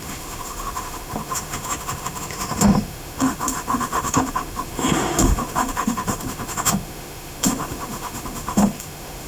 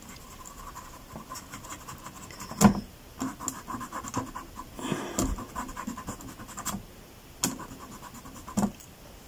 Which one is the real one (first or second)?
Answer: second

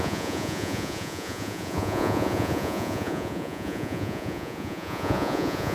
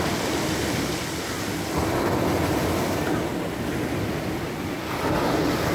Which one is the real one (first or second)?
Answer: second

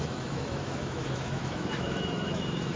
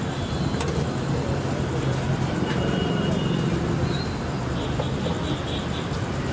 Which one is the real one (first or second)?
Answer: second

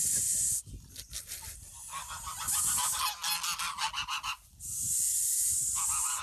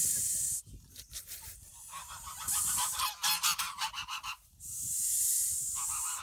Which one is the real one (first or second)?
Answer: first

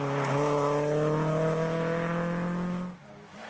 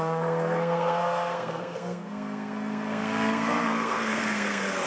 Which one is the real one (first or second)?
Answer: first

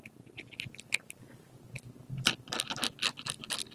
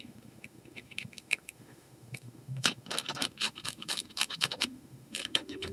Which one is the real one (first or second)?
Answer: first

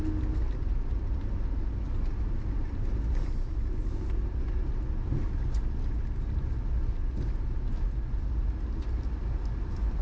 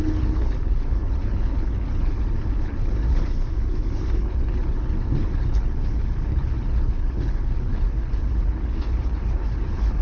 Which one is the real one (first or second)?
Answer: first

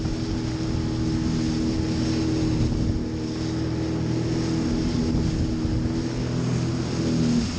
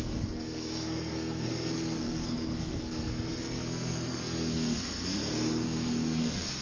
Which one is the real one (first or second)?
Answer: first